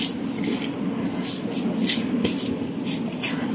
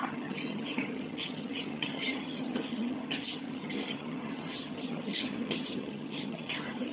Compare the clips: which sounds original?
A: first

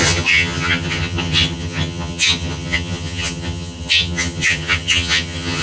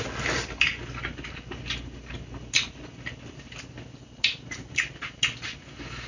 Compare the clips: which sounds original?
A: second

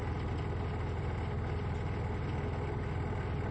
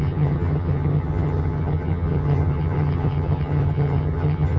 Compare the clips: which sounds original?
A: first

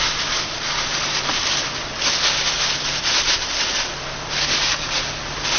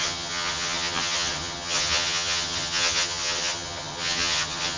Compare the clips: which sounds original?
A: first